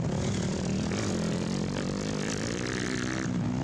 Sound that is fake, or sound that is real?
real